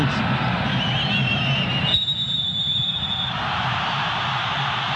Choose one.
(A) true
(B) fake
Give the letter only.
B